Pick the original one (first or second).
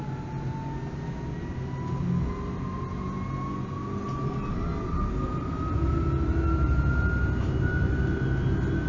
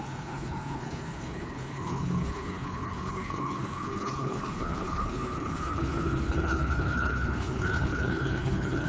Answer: first